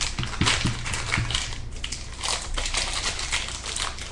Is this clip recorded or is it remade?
recorded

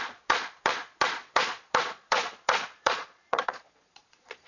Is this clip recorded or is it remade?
remade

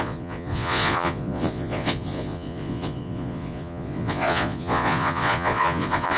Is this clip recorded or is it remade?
remade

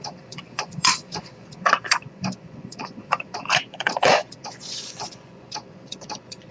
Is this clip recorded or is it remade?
remade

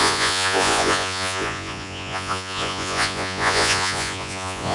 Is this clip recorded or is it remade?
remade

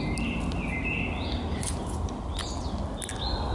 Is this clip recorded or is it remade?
recorded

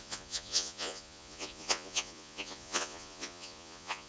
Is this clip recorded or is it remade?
remade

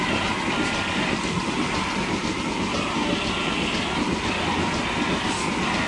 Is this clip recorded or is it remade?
recorded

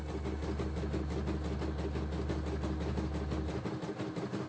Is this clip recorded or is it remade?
recorded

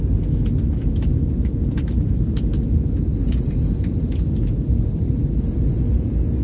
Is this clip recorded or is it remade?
recorded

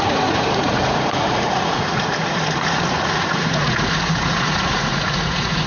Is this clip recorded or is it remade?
remade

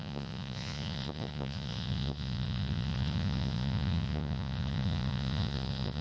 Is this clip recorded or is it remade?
remade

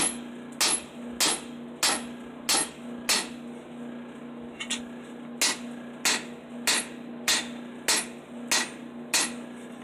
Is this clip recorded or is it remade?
recorded